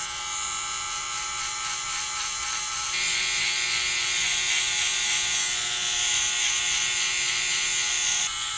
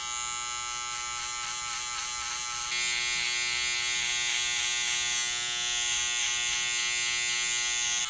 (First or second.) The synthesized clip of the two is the first